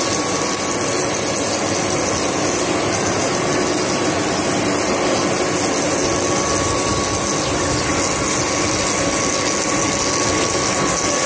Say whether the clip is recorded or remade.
recorded